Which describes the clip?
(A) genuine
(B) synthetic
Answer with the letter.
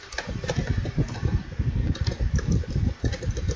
B